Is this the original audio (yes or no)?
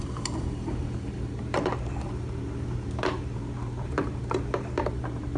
no